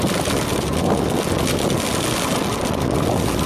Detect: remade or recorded recorded